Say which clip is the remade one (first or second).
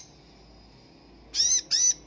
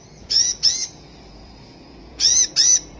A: second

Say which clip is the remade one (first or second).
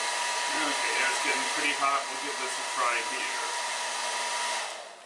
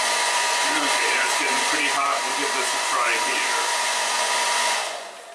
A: second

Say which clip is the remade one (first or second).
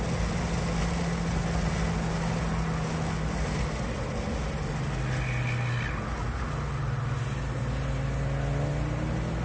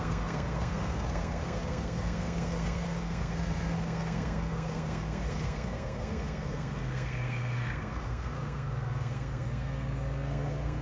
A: second